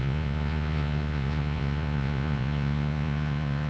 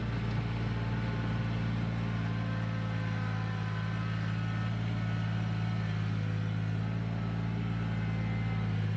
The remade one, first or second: first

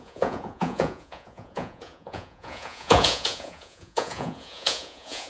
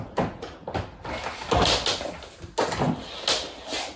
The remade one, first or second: first